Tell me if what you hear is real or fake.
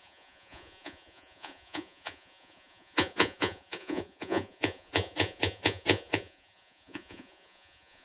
fake